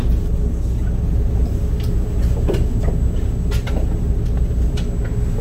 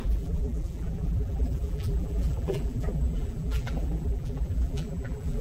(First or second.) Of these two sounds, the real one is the first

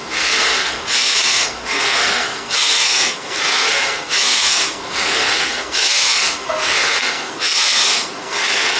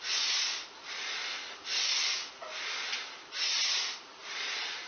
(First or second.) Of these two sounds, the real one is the second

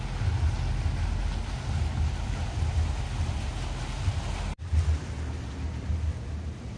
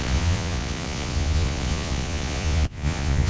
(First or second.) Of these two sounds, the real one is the first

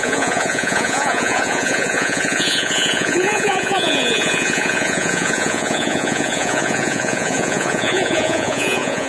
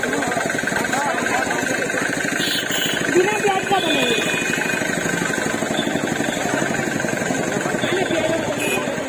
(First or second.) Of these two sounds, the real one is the second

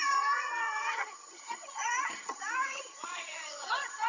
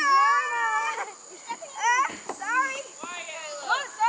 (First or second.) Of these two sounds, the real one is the second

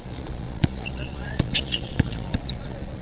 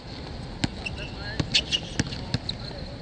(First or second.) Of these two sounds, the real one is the second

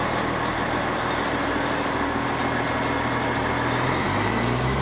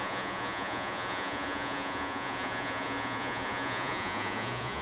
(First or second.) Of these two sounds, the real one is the first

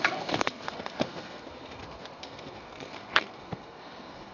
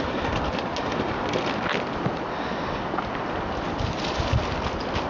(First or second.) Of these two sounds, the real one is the second